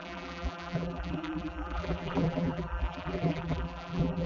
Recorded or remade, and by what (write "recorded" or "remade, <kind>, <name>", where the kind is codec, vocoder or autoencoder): remade, vocoder, BigVGAN v2